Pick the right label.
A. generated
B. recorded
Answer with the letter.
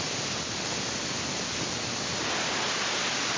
B